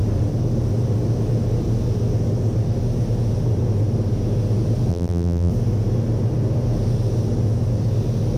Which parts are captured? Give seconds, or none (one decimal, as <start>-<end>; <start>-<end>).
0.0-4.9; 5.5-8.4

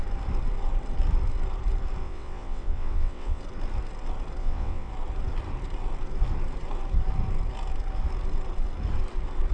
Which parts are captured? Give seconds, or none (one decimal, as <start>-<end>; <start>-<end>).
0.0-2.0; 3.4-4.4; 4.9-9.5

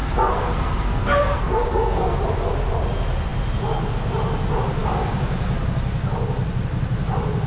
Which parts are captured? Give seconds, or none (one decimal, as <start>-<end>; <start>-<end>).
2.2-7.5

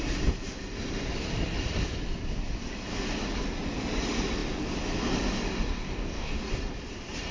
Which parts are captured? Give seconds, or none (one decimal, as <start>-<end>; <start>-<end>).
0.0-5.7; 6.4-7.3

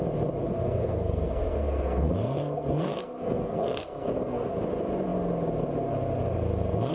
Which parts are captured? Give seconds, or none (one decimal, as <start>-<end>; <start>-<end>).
0.0-0.4; 4.5-6.9